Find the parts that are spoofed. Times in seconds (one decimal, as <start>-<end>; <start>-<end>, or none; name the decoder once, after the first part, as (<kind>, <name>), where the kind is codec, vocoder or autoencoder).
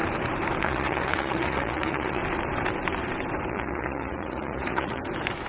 0.6-2.2 (vocoder, Vocos); 3.5-5.0